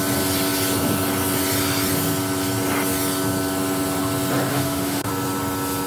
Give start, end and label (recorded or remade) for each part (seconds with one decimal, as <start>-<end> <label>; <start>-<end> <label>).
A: 0.0-4.5 recorded; 4.5-5.1 remade; 5.1-5.9 recorded